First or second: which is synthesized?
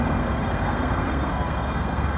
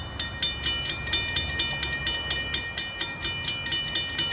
first